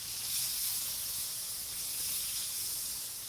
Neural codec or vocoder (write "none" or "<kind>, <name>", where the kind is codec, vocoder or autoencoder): autoencoder, DAC-VAE